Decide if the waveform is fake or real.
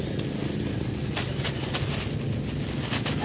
real